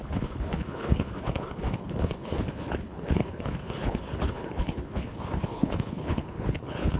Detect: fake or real fake